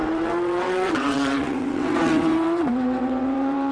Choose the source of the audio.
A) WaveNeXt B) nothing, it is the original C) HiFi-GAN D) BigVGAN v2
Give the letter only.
A